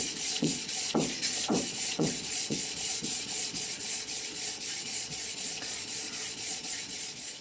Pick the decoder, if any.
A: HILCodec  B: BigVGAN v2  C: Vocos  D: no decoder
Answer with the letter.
C